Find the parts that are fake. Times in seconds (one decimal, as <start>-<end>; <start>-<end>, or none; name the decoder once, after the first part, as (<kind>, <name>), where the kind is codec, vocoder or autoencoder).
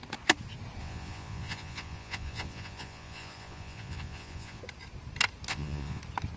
0.8-4.6 (vocoder, Vocos); 5.5-6.0